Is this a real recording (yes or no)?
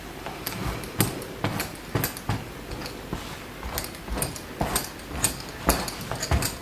yes